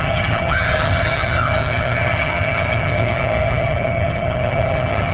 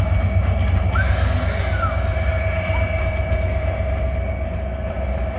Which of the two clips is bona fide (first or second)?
second